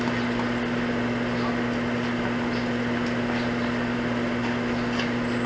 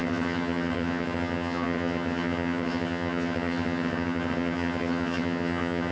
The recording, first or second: first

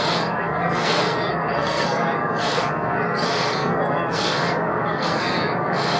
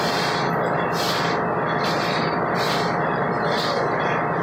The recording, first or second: second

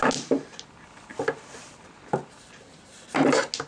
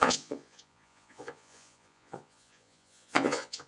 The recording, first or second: first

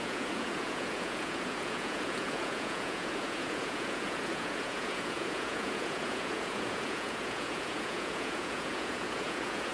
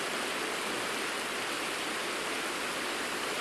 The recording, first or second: second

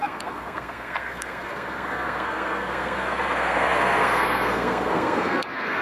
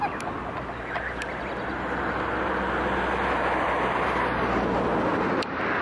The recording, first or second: second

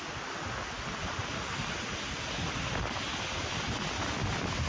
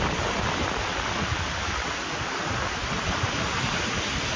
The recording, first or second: first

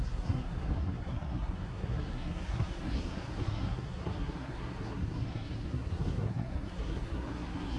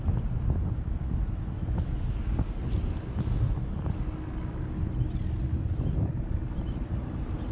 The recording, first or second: second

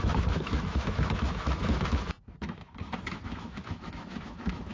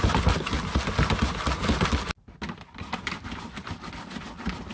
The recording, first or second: second